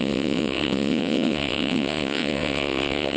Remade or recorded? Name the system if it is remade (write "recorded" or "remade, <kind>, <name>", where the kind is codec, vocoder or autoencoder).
remade, vocoder, WaveNeXt